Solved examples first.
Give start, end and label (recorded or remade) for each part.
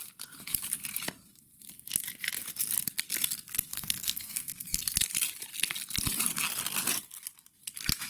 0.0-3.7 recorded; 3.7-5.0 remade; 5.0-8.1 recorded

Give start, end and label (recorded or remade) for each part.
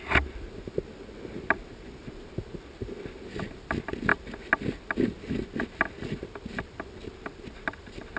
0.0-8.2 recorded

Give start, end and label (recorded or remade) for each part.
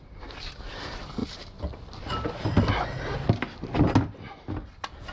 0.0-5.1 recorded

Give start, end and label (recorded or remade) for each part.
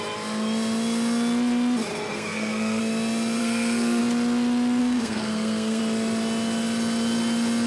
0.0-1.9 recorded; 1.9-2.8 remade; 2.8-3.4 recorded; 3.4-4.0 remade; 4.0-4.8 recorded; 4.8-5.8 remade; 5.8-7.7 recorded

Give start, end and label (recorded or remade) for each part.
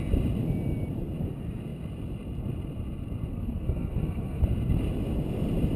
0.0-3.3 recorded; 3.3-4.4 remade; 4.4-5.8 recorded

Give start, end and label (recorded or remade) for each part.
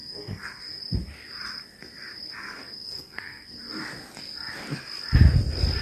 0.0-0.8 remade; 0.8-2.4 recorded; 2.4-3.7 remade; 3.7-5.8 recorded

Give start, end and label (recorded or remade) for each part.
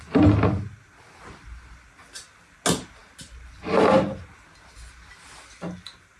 0.0-6.2 recorded